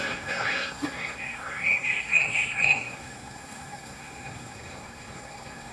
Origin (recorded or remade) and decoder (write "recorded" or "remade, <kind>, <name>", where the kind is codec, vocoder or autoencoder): remade, codec, SNAC